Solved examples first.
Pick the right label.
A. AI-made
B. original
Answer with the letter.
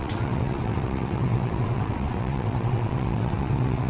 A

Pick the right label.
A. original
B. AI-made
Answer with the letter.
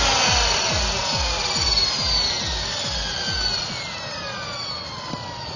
A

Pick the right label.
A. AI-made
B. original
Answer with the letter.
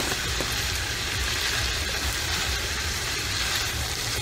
B